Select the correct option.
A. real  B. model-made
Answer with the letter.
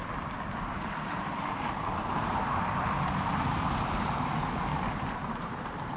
B